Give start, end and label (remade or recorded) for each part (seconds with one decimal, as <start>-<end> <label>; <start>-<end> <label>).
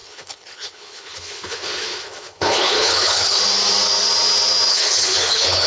0.0-3.4 remade; 3.4-4.7 recorded; 4.7-5.7 remade